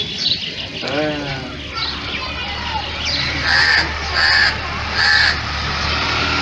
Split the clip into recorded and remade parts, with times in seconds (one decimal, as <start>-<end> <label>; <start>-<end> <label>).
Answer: 0.0-6.4 recorded